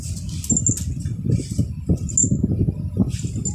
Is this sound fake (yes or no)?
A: no